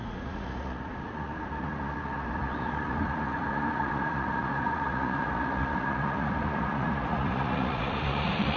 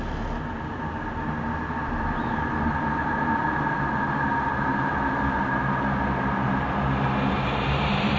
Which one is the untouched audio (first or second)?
second